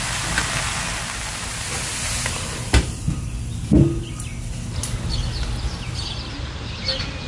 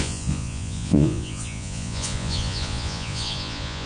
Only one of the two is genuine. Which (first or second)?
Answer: first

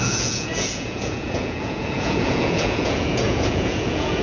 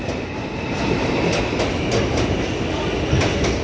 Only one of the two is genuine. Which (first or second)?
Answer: second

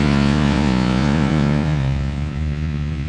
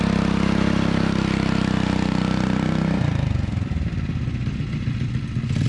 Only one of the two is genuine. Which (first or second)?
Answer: second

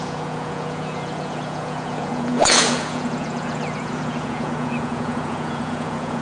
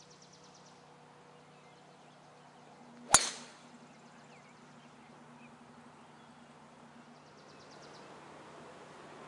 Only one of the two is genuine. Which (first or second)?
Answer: second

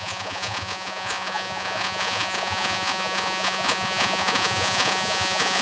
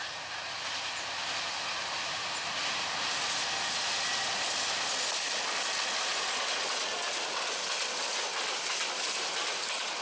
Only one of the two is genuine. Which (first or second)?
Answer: second